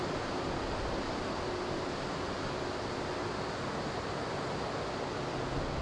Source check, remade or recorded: recorded